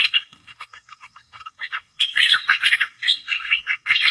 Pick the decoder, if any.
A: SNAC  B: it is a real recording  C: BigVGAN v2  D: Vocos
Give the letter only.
A